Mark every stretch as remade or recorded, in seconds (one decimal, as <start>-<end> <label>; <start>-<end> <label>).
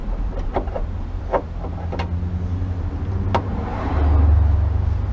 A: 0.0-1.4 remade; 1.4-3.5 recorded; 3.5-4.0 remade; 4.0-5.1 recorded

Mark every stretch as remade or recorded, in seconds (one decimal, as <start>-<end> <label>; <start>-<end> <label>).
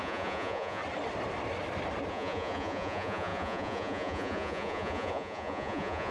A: 0.0-0.8 remade; 0.8-2.1 recorded; 2.1-6.1 remade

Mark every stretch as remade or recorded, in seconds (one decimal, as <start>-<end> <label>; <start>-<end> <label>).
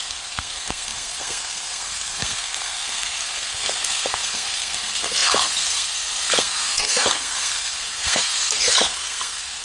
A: 0.0-9.6 remade